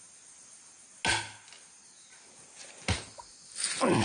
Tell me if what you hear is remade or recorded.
recorded